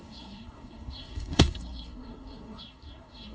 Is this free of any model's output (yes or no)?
no